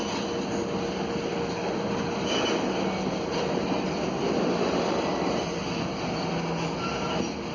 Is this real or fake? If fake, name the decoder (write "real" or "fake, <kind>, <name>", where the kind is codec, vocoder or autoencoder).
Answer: real